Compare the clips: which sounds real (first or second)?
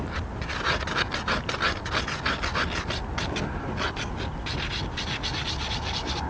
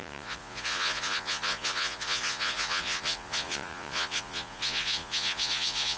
first